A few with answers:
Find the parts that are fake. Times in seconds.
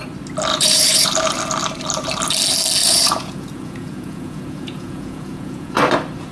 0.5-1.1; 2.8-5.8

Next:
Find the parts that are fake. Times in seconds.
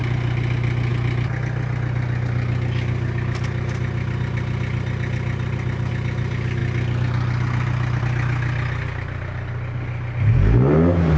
none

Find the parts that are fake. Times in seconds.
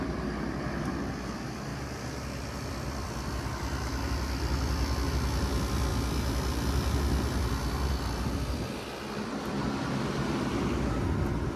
none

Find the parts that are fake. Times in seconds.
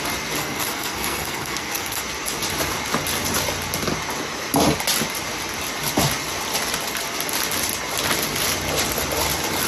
0.4-2.0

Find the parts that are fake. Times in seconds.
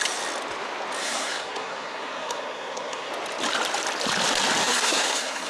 1.0-3.1; 4.6-5.5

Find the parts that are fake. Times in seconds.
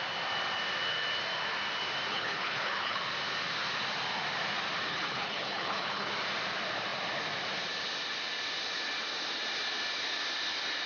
2.1-3.0; 4.9-6.1